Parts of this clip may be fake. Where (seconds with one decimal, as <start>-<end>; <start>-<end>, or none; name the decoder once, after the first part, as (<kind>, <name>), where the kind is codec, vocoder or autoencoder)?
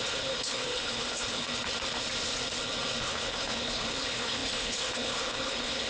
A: 0.0-1.5 (codec, HILCodec); 3.0-5.9